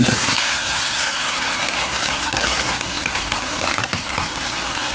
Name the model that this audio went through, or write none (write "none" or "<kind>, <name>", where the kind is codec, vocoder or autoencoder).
codec, SNAC